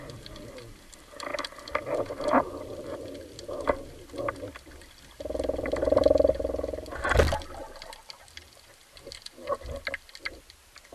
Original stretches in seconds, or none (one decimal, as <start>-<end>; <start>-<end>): 0.0-10.9